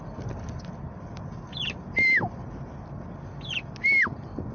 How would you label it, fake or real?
real